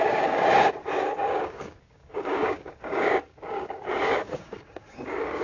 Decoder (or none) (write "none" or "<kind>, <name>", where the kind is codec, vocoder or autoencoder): codec, DAC